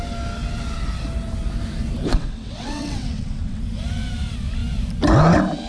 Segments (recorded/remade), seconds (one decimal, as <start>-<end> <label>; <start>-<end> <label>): 0.0-2.1 recorded; 2.1-3.6 remade; 3.6-5.7 recorded